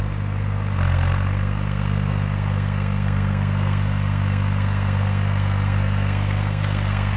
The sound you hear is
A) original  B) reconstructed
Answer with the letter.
B